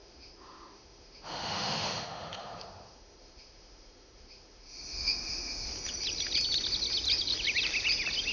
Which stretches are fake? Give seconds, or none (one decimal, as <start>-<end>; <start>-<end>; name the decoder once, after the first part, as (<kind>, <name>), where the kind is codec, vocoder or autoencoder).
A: 0.0-5.7 (autoencoder, DAC-VAE)

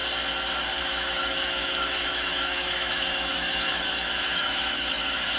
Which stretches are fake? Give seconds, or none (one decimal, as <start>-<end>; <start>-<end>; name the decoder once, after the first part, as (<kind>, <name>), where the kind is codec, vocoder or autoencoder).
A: 0.8-5.4 (autoencoder, DAC-VAE)

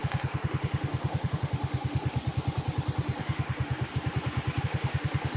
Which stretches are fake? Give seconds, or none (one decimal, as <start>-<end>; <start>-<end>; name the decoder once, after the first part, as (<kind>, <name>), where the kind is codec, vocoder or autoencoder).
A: 0.0-2.2 (autoencoder, DAC-VAE); 3.2-3.9; 4.6-5.4

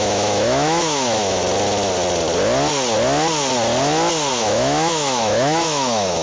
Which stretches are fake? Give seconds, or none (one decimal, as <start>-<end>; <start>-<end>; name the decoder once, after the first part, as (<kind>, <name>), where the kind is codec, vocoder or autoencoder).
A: 0.0-1.4 (autoencoder, DAC-VAE); 4.3-6.2

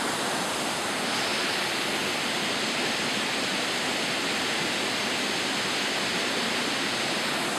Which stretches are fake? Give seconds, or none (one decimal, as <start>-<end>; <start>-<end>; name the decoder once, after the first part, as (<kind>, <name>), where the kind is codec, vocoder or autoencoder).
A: none

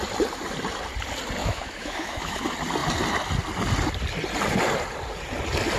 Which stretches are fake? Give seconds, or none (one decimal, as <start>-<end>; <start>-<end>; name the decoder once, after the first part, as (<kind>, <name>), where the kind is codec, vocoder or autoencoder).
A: 1.4-2.4 (autoencoder, DAC-VAE)

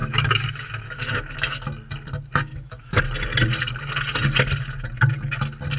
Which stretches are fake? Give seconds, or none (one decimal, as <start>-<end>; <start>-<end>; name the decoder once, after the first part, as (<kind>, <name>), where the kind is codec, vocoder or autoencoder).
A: 0.0-1.6 (autoencoder, DAC-VAE); 2.5-3.0